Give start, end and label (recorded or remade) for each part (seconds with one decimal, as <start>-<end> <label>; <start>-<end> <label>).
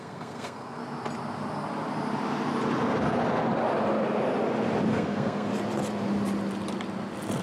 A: 0.0-0.8 remade; 0.8-4.9 recorded; 4.9-5.5 remade; 5.5-7.4 recorded